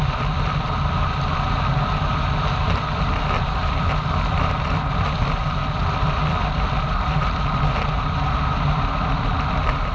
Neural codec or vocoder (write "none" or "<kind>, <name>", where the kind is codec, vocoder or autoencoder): vocoder, BigVGAN v2